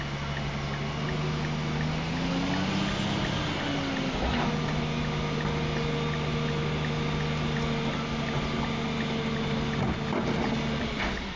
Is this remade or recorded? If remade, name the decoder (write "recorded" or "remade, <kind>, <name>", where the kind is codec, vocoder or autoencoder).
recorded